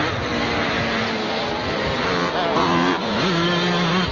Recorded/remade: recorded